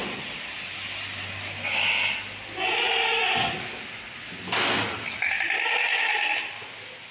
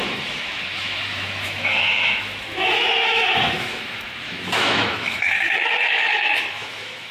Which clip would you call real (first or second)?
first